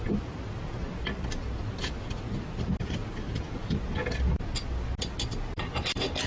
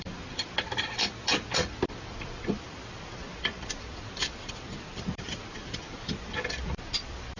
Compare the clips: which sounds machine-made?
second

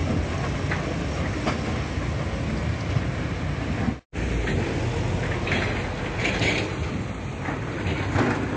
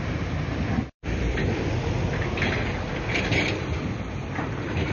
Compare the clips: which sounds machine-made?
second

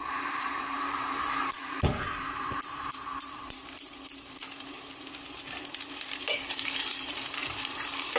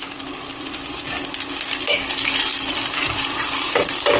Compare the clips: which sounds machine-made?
first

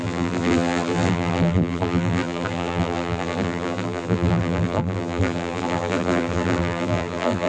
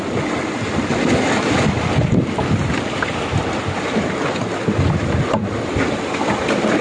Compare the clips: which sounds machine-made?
first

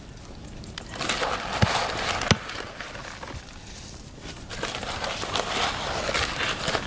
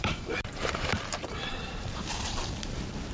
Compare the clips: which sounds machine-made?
second